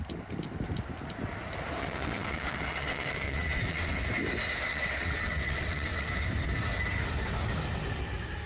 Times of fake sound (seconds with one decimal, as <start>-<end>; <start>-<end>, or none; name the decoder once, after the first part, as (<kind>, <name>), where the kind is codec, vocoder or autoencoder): 1.8-3.9 (vocoder, WaveNeXt); 4.7-6.1